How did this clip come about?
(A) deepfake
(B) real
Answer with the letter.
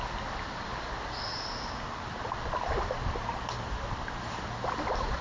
B